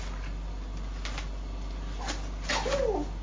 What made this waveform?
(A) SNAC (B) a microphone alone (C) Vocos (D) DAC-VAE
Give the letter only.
B